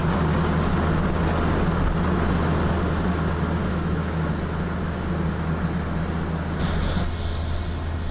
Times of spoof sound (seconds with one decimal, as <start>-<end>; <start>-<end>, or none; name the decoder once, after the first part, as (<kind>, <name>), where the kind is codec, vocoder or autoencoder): 3.6-4.4 (autoencoder, DAC-VAE)